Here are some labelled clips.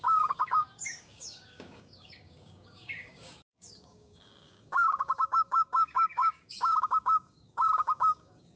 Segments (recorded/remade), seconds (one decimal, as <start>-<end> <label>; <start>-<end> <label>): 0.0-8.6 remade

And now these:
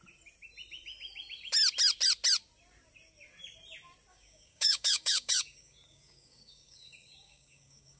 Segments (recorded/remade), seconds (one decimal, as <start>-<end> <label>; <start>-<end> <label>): 0.0-4.1 recorded; 4.1-8.0 remade

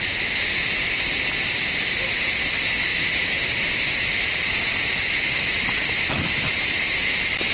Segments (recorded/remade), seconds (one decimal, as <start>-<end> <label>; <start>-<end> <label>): 0.0-7.5 recorded

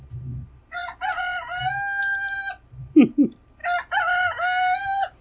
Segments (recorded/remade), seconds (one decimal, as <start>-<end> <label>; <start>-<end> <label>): 0.0-5.2 recorded

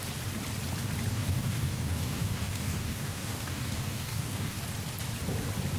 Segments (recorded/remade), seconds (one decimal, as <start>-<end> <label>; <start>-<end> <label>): 0.0-1.1 recorded; 1.1-4.6 remade; 4.6-5.8 recorded

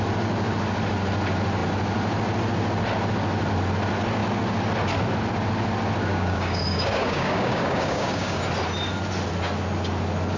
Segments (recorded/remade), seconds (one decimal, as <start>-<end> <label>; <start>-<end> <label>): 0.0-6.1 recorded; 6.1-8.4 remade; 8.4-10.4 recorded